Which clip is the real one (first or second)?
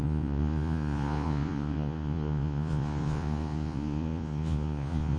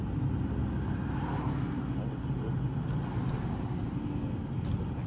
second